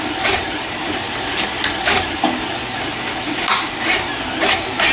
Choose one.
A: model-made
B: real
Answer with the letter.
A